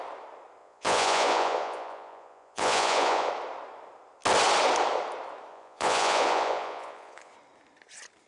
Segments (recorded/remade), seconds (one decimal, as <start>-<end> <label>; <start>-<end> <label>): 0.0-0.6 recorded; 0.6-3.3 remade; 3.3-5.5 recorded; 5.5-7.3 remade; 7.3-8.3 recorded

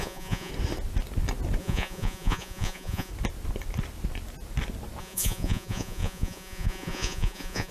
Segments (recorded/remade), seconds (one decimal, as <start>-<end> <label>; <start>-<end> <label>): 0.0-0.5 remade; 0.5-1.6 recorded; 1.6-3.1 remade; 3.1-5.0 recorded; 5.0-7.7 remade